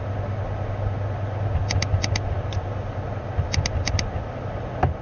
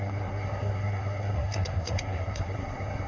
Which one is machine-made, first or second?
second